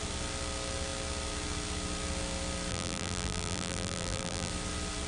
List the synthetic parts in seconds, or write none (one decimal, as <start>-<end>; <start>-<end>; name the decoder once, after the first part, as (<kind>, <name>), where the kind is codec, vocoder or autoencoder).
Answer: 2.7-4.5 (vocoder, BigVGAN v2)